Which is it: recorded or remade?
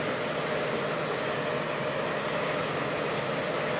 recorded